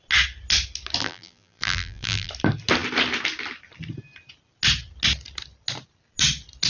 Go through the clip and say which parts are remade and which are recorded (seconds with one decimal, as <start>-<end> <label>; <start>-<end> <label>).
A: 0.0-1.0 recorded; 1.0-2.3 remade; 2.3-6.7 recorded